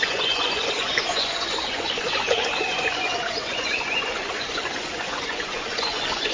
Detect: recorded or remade remade